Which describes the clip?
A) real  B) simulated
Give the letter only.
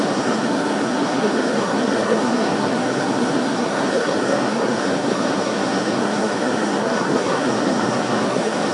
B